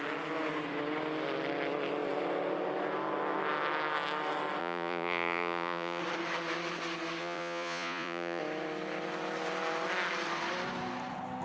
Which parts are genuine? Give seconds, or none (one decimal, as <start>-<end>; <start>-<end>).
0.0-4.6; 6.0-7.2; 8.4-11.4